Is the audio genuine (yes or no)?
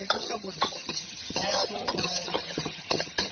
no